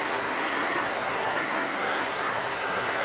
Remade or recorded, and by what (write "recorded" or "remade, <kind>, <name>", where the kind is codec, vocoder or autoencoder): remade, codec, SNAC